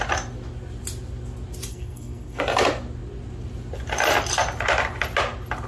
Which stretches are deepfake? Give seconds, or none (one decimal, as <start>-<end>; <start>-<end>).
1.7-2.4